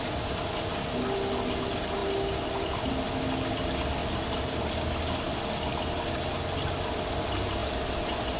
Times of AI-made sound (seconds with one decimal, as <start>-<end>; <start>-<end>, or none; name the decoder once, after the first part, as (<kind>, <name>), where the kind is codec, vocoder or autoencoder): 4.0-4.7 (vocoder, BigVGAN v2)